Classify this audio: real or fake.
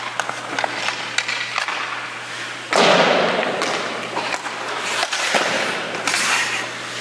real